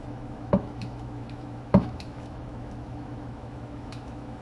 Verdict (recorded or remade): remade